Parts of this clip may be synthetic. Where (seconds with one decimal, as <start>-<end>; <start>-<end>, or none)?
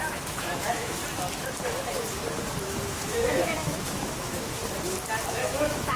0.0-1.0; 2.6-4.6; 5.3-6.0